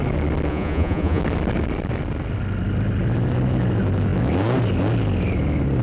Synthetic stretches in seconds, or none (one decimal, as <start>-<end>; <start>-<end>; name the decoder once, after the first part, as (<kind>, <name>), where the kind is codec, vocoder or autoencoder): 0.5-1.2 (vocoder, Vocos)